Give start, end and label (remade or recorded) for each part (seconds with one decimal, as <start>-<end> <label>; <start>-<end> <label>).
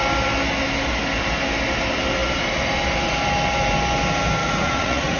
0.0-4.4 recorded; 4.4-5.2 remade